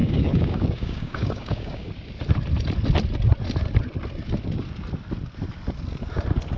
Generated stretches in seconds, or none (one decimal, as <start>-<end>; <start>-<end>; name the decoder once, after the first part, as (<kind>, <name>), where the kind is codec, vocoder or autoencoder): 0.0-1.9 (codec, DAC)